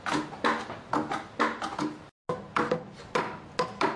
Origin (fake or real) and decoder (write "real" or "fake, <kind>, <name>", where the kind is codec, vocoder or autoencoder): real